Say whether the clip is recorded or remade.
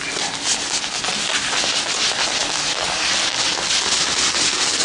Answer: recorded